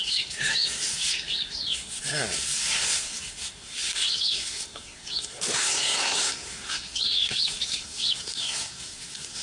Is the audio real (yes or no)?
no